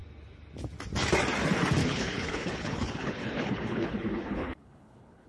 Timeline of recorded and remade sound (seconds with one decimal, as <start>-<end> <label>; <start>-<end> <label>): 0.0-1.8 recorded; 1.8-5.3 remade